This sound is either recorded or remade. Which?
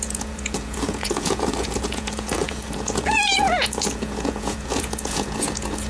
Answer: remade